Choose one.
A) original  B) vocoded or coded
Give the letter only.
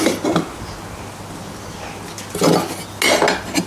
A